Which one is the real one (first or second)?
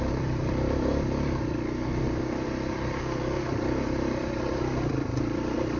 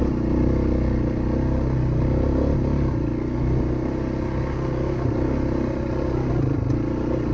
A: second